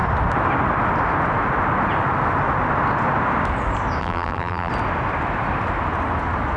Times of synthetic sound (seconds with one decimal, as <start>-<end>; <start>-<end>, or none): 4.0-4.7